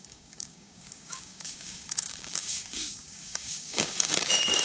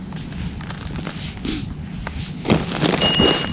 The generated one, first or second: first